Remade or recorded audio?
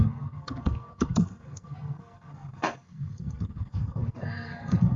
remade